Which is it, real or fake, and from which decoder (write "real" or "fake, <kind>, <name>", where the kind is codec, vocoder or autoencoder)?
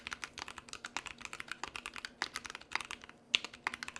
real